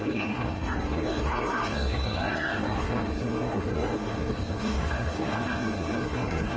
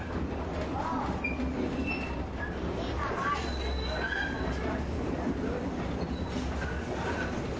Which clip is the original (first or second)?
second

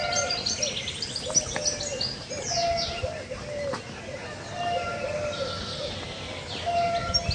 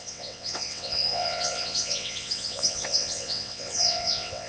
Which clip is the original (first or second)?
first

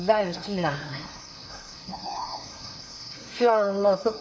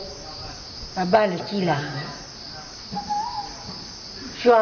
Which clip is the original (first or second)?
second